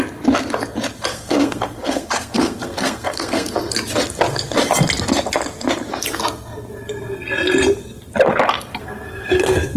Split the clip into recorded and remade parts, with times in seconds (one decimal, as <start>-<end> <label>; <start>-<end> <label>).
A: 0.0-1.1 recorded; 1.1-3.5 remade; 3.5-8.7 recorded; 8.7-9.8 remade